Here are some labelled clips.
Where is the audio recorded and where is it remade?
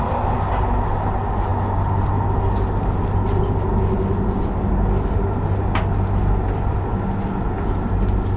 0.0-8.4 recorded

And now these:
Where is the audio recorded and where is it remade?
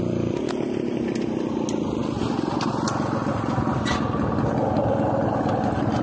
0.0-6.0 recorded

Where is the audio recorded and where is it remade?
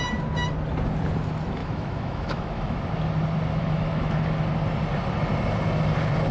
0.0-1.6 recorded; 1.6-2.8 remade; 2.8-3.5 recorded; 3.5-4.2 remade; 4.2-6.3 recorded